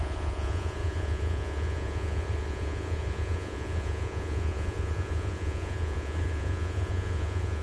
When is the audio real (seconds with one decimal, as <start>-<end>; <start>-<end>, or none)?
none